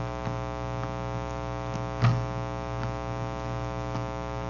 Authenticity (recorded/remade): recorded